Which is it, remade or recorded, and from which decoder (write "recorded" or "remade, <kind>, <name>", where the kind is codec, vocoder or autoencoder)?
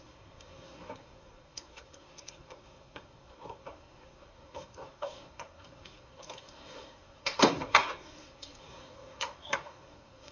remade, codec, SNAC